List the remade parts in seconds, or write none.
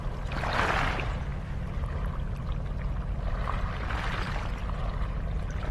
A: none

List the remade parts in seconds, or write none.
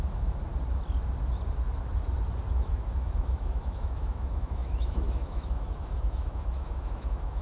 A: 0.0-0.5; 2.5-7.4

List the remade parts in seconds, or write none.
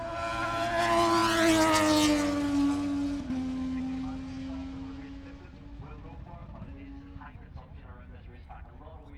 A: none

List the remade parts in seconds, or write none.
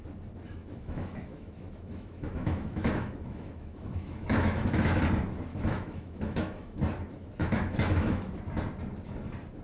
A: 0.6-5.0; 5.5-6.8; 7.4-8.3